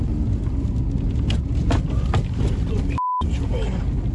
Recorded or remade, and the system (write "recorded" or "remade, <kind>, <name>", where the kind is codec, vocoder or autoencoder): recorded